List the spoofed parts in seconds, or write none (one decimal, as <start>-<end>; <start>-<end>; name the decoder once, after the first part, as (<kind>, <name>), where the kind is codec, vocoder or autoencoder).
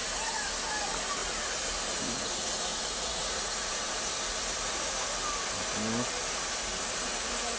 2.7-4.0 (vocoder, Vocos)